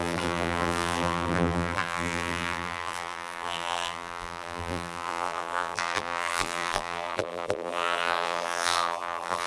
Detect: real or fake fake